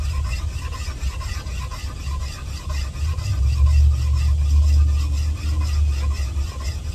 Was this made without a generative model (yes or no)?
yes